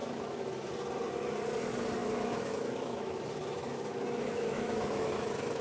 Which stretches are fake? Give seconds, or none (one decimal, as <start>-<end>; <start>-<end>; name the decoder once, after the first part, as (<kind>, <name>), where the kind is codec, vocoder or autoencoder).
0.0-0.7 (autoencoder, DAC-VAE); 2.0-5.6